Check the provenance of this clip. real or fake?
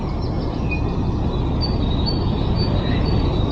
real